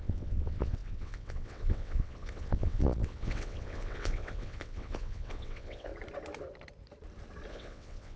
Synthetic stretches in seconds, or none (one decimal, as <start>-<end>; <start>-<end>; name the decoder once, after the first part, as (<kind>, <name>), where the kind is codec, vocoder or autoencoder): 0.0-5.9 (vocoder, WaveNeXt); 7.5-8.2